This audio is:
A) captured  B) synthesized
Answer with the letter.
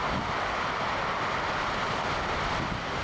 A